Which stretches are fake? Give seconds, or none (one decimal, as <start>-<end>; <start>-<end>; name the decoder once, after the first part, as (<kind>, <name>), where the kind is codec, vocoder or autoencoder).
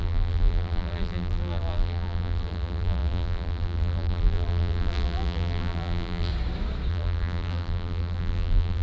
0.0-6.3 (vocoder, BigVGAN v2); 6.9-8.8